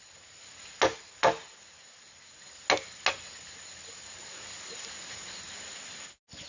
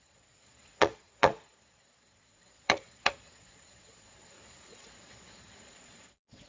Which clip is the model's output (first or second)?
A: second